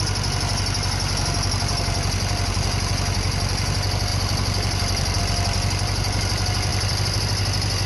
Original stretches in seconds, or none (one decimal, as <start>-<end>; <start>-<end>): 0.0-4.1; 5.2-6.7; 7.2-7.9